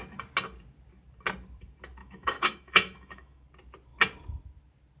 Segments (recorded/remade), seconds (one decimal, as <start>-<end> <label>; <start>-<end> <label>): 0.0-2.0 recorded; 2.0-3.4 remade; 3.4-5.0 recorded